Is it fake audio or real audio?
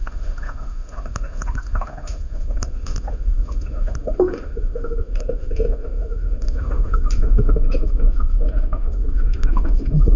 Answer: fake